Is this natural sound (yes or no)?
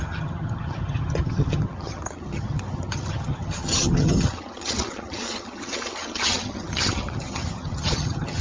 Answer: no